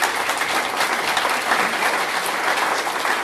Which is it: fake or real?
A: real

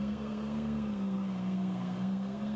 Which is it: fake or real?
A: fake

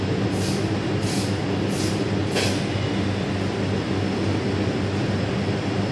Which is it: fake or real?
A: real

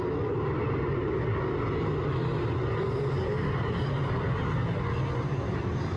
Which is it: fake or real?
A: real